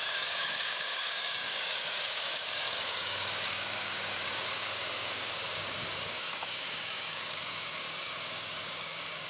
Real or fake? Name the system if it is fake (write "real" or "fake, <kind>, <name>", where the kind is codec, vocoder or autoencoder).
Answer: fake, codec, DAC